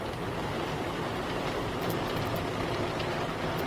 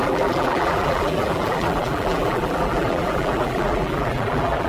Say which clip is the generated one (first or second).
second